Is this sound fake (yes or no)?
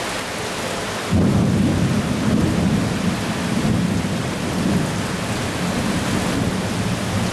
no